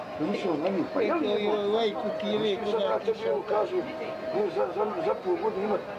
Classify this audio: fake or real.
real